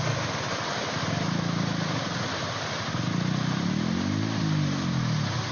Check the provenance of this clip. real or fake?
real